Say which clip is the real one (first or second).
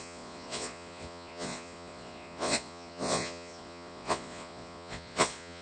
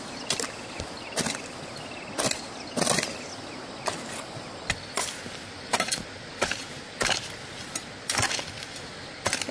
second